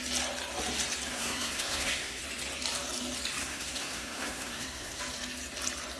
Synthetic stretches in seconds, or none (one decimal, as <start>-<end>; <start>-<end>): 1.1-2.2; 3.4-5.0